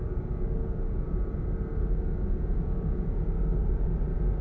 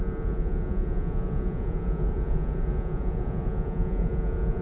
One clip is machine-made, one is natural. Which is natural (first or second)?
first